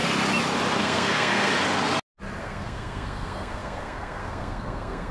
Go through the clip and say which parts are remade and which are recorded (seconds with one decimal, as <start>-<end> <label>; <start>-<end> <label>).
0.0-0.8 recorded; 0.8-1.5 remade; 1.5-2.4 recorded; 2.4-5.1 remade